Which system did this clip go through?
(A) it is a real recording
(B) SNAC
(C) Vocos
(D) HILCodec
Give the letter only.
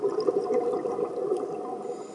A